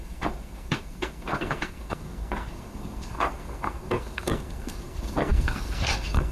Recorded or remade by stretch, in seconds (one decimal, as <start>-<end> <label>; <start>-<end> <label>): 0.0-6.3 remade